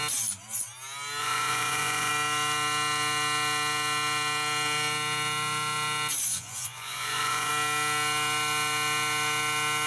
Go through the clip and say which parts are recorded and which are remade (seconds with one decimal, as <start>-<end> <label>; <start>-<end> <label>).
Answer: 0.0-1.2 recorded; 1.2-2.1 remade; 2.1-6.3 recorded; 6.3-7.5 remade; 7.5-9.9 recorded